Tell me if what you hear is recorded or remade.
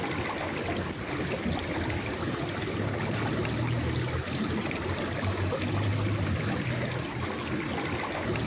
recorded